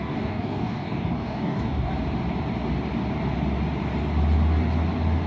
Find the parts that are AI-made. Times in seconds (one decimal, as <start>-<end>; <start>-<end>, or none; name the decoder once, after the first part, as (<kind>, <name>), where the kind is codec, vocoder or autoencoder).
0.0-1.9 (codec, DAC)